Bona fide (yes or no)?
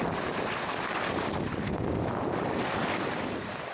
no